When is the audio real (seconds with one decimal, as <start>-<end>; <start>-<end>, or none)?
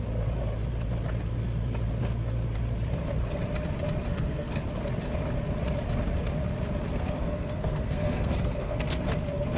0.0-4.1; 4.6-6.9; 9.0-9.6